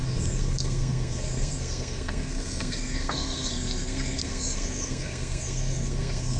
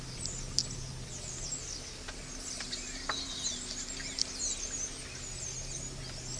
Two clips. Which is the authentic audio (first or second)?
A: second